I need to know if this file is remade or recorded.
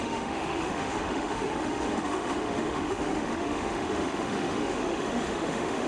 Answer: remade